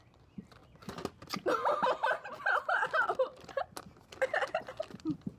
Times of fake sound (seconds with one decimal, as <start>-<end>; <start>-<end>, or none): none